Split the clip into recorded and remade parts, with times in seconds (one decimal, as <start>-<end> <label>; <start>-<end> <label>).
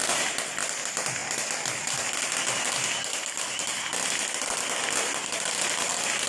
0.0-6.3 recorded